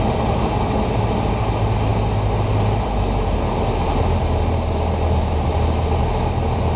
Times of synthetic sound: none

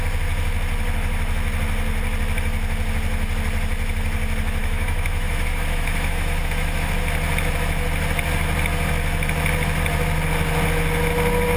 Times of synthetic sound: 4.6-6.9 (autoencoder, DAC-VAE)

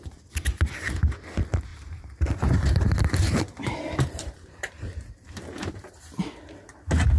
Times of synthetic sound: 1.7-6.0 (vocoder, BigVGAN v2)

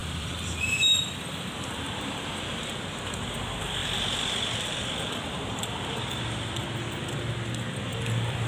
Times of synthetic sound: 0.0-2.6 (vocoder, BigVGAN v2); 3.8-6.2; 7.9-8.5

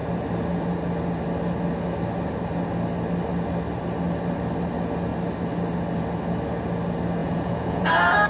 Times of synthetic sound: 7.2-7.9 (vocoder, Vocos)

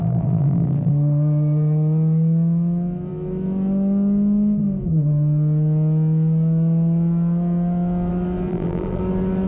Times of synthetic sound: 0.0-0.9 (vocoder, BigVGAN v2); 8.5-9.0

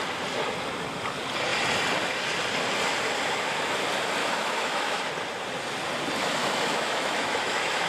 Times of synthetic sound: 4.2-5.0 (autoencoder, DAC-VAE); 6.4-7.9